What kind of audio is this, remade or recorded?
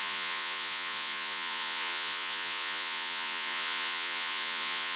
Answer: remade